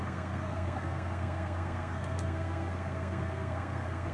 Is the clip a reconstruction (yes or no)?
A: yes